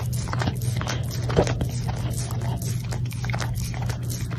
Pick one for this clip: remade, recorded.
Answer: recorded